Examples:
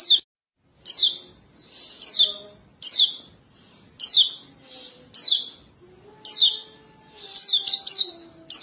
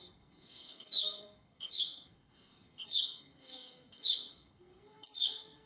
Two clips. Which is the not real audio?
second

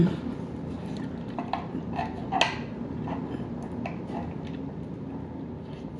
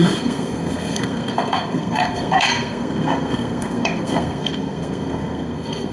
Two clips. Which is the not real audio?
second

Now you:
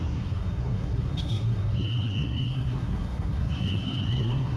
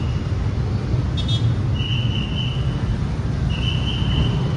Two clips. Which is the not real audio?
first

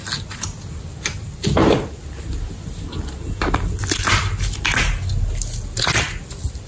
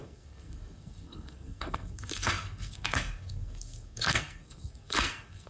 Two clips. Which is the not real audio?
second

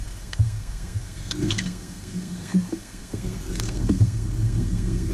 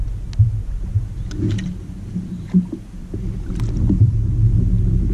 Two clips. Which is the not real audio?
first